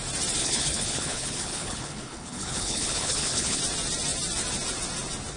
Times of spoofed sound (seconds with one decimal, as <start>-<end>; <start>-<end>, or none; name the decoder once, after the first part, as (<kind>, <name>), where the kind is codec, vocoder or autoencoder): 0.4-3.6 (codec, HILCodec)